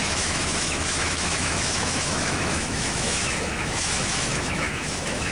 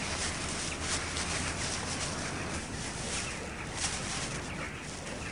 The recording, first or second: second